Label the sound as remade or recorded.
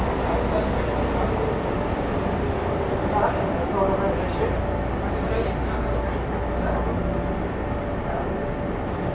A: recorded